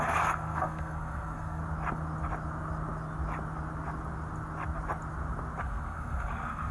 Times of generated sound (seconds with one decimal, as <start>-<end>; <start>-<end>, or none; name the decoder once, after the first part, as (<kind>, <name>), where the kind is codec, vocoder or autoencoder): 0.0-1.6 (codec, SNAC); 5.6-6.7